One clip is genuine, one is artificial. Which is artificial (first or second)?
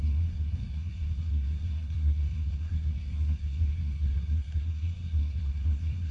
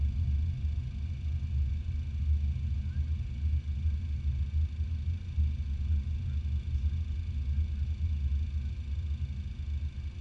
first